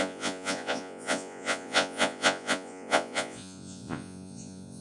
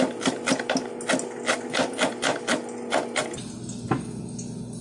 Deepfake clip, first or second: first